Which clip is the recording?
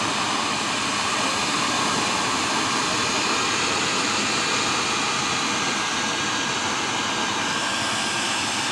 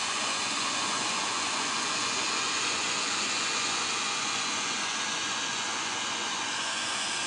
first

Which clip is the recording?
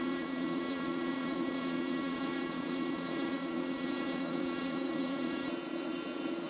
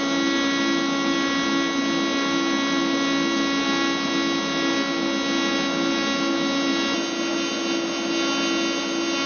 second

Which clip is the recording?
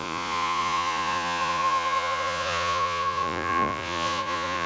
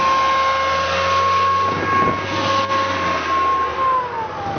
second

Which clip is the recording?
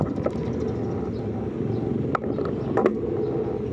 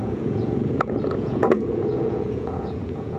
first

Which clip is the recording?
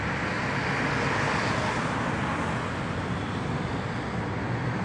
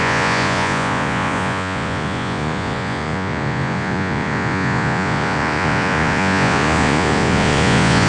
first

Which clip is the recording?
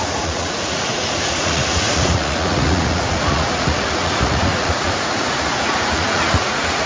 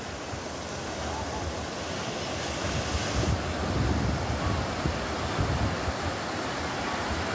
second